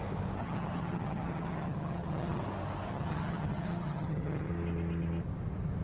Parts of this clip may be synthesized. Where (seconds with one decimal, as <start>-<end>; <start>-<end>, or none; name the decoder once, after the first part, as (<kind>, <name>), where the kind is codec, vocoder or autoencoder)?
0.4-2.4 (vocoder, HiFi-GAN); 2.9-4.5